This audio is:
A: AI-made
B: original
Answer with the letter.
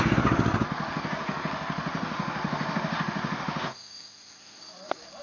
B